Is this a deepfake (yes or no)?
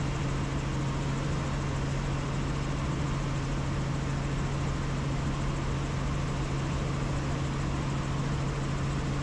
no